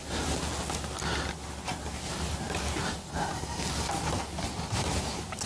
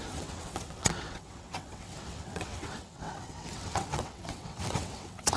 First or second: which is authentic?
first